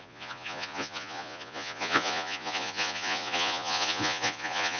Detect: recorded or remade remade